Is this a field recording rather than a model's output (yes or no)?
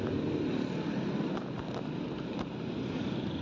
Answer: yes